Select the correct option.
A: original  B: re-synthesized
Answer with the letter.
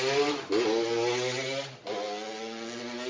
A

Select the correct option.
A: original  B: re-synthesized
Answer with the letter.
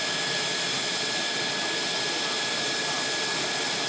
A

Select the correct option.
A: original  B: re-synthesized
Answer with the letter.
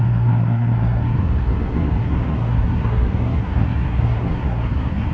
B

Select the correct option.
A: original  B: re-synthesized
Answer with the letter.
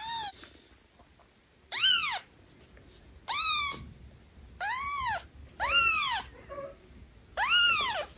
A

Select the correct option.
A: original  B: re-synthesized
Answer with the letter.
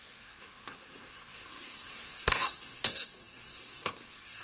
B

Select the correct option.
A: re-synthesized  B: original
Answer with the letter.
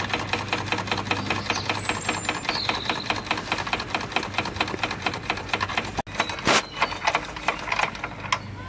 B